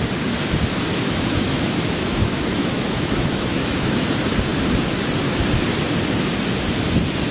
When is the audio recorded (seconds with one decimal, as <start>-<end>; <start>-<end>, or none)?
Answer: 0.0-0.9; 4.1-7.3